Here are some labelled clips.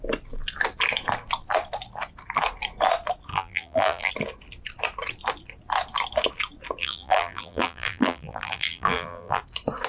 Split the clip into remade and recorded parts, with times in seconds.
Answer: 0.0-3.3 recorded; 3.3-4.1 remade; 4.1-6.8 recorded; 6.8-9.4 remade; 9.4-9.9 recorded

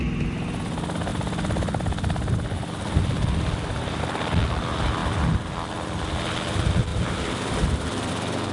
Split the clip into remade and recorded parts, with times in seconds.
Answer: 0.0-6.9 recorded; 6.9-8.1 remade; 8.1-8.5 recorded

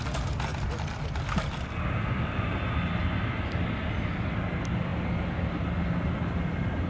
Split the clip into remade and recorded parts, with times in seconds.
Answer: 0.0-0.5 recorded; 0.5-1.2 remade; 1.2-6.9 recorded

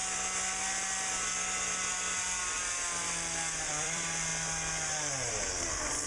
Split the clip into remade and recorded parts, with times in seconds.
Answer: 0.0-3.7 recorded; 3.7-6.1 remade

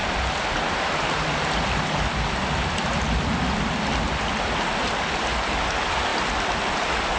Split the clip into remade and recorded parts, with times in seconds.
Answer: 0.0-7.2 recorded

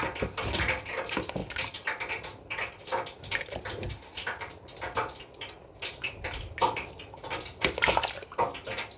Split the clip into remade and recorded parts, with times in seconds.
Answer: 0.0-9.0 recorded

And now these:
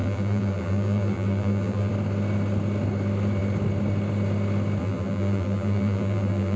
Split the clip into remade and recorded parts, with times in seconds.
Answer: 0.0-1.9 remade; 1.9-4.8 recorded; 4.8-6.6 remade

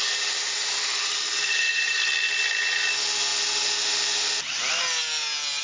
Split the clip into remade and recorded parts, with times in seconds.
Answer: 0.0-0.4 recorded; 0.4-2.0 remade; 2.0-5.6 recorded